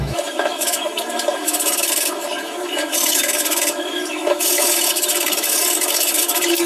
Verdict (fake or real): fake